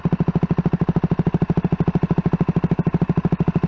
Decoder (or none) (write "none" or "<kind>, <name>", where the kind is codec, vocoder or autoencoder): none